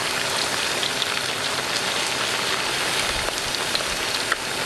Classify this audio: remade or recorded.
recorded